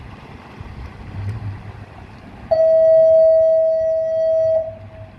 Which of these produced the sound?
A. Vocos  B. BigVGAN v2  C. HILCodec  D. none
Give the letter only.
D